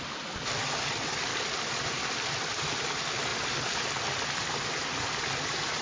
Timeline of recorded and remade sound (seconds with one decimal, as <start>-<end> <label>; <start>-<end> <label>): 0.0-5.8 recorded